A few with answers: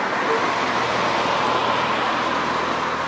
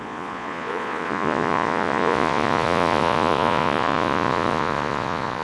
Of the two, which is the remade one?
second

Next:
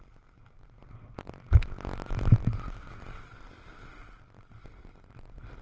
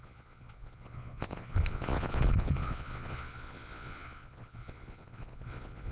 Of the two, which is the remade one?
second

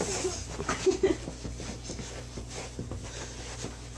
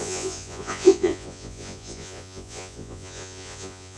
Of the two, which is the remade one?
second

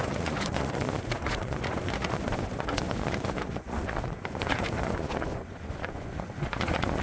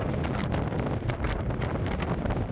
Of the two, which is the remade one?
first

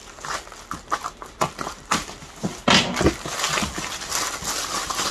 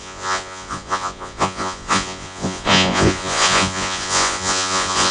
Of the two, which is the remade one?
second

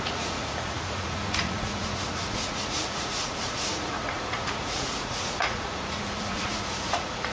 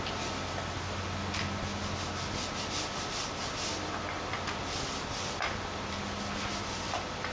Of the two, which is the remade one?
first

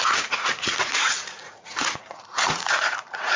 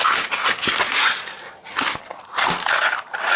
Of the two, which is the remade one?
first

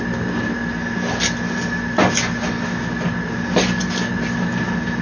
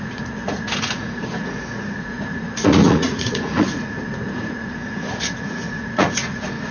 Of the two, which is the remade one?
second